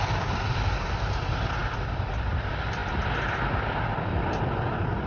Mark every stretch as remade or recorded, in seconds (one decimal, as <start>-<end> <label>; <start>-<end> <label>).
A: 0.0-5.1 recorded